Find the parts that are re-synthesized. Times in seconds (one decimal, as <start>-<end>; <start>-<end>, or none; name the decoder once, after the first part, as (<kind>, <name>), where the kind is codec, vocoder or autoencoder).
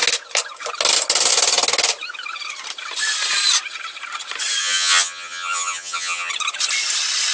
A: 4.6-6.3 (vocoder, HiFi-GAN)